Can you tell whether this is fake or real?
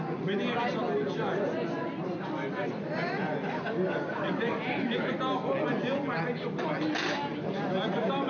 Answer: real